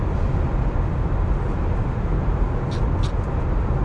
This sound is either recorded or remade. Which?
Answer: recorded